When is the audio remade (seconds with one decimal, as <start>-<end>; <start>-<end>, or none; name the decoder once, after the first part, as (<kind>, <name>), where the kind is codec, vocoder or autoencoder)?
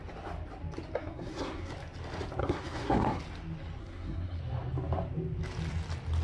1.0-1.7 (codec, SNAC); 2.4-3.2; 3.8-4.4